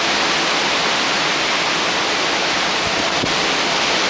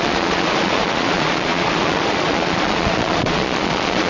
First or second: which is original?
first